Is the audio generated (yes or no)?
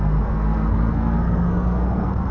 yes